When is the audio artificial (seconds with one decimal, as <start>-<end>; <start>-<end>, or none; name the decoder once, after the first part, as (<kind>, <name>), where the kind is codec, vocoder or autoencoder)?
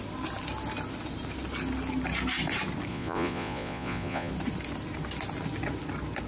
2.9-4.3 (vocoder, Vocos)